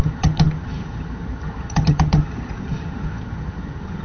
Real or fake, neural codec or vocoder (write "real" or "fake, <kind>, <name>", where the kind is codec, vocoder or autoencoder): fake, vocoder, HiFi-GAN